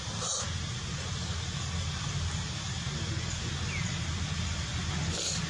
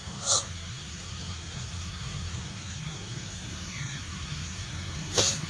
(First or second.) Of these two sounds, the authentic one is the first